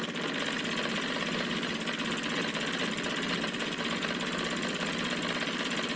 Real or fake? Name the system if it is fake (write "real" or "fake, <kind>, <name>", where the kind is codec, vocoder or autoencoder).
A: real